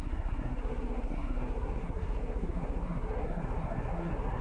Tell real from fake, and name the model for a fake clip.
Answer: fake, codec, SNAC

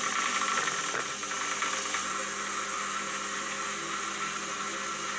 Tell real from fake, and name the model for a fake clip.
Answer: real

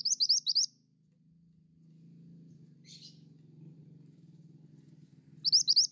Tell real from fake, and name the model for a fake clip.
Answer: real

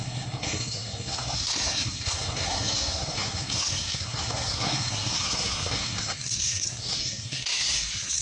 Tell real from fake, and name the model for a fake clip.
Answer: fake, codec, SNAC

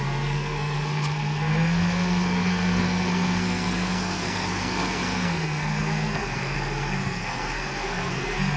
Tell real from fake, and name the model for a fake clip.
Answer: fake, codec, SNAC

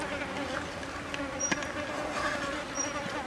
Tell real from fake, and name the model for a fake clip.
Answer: real